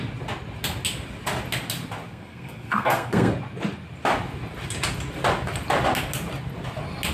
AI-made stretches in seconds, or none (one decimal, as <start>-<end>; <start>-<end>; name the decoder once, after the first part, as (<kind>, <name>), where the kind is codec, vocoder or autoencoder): 2.1-3.3 (codec, SNAC)